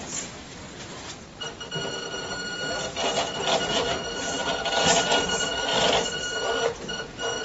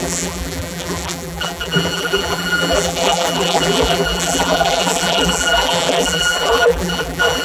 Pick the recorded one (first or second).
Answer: first